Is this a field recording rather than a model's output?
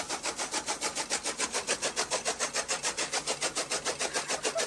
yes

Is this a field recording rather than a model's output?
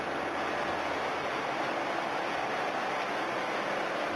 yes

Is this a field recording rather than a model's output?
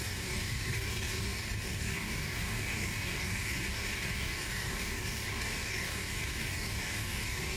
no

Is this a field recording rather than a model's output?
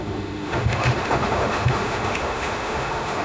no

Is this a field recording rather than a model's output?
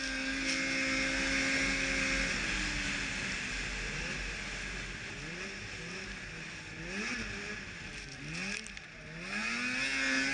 yes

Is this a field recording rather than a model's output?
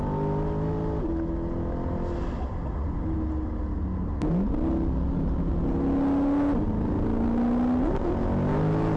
yes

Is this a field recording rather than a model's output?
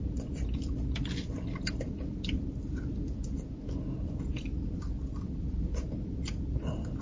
no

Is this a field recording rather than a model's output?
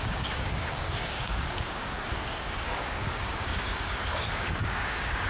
no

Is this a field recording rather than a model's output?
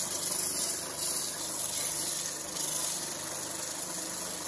yes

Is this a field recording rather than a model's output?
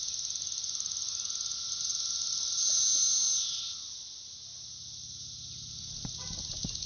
yes